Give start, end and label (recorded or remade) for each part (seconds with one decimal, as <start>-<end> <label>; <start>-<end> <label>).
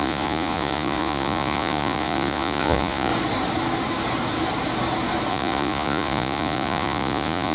0.0-3.1 remade; 3.1-5.3 recorded; 5.3-7.5 remade